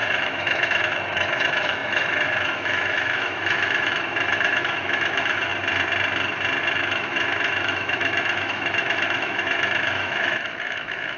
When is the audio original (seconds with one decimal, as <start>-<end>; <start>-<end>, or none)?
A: 5.5-6.6